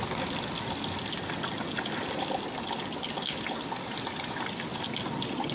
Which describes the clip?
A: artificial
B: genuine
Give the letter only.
B